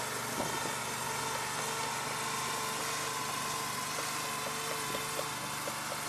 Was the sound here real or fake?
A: real